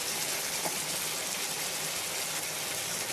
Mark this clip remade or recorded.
recorded